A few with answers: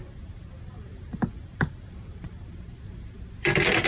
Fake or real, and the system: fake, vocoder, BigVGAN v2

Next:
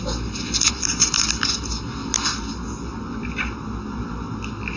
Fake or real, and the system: real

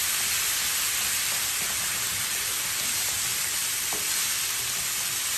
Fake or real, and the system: real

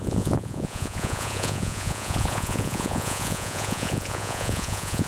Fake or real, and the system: fake, vocoder, Vocos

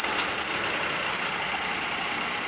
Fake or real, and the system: real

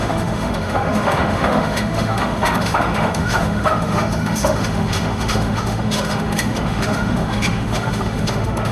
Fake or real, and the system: fake, autoencoder, DAC-VAE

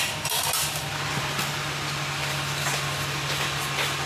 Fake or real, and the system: real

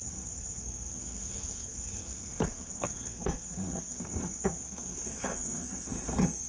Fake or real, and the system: fake, codec, SNAC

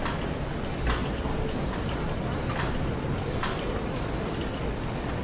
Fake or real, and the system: real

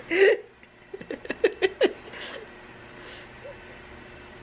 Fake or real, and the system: real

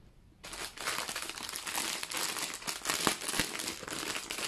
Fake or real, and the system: real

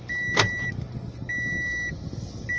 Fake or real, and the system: real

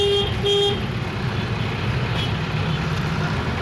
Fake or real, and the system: real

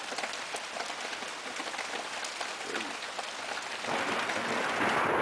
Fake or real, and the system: real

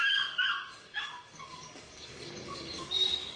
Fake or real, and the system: fake, codec, DAC